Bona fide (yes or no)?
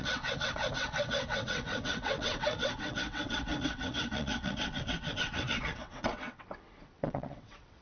no